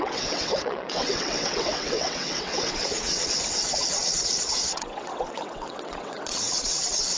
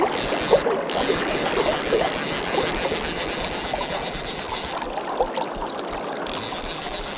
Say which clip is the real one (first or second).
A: second